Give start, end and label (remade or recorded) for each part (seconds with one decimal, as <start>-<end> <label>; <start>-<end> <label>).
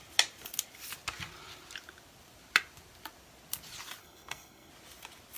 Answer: 0.0-4.0 recorded; 4.0-4.7 remade; 4.7-5.4 recorded